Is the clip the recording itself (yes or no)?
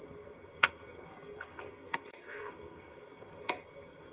no